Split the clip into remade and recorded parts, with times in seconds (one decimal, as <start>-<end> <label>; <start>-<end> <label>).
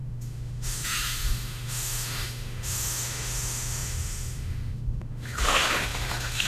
0.0-6.5 remade